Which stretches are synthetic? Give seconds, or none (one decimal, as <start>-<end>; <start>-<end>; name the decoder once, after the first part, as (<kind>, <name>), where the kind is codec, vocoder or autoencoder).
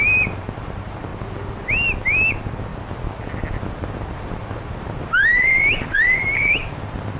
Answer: 0.0-1.1 (vocoder, BigVGAN v2); 2.3-2.7; 3.6-7.2